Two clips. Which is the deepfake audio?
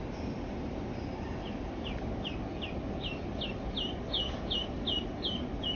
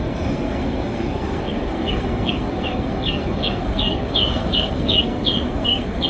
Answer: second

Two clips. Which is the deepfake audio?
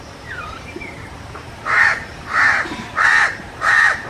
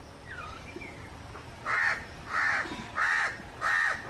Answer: first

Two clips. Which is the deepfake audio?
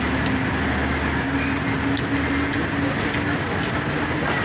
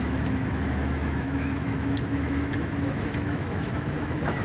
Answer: second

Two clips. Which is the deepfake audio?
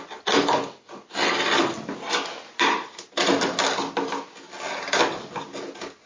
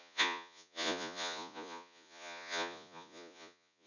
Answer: second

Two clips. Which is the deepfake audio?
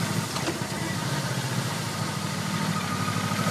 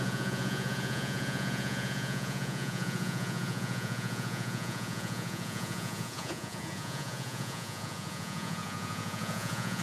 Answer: second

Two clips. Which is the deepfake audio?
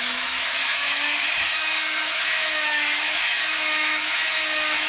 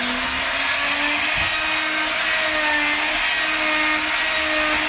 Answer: first